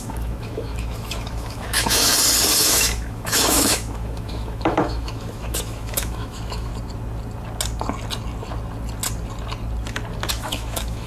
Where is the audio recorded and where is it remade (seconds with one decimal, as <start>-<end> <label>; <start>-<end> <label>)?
0.0-2.1 remade; 2.1-2.6 recorded; 2.6-6.7 remade; 6.7-10.3 recorded; 10.3-11.1 remade